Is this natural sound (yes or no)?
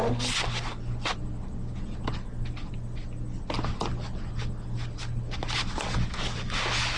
yes